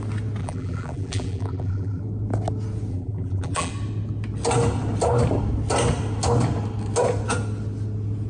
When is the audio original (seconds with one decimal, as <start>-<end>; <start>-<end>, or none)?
0.0-0.4; 2.0-2.9; 3.7-8.3